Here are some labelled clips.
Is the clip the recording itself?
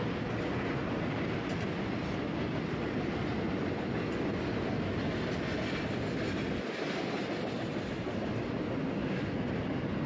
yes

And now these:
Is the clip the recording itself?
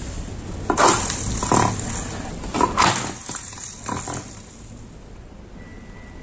yes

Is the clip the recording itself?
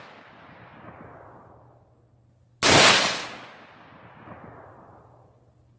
yes